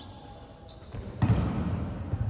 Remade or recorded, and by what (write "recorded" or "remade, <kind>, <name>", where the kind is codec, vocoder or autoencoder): recorded